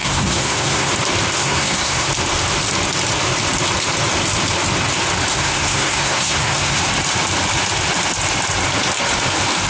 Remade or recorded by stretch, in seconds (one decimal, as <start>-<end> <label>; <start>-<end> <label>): 0.0-0.9 remade; 0.9-1.4 recorded; 1.4-2.1 remade; 2.1-5.3 recorded; 5.3-6.8 remade; 6.8-9.7 recorded